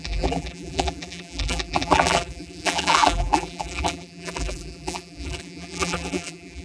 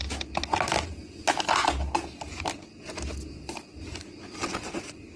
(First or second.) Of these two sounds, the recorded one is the second